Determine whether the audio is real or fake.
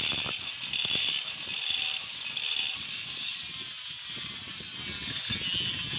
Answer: real